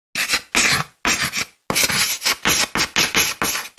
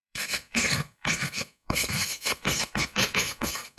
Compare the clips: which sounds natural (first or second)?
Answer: first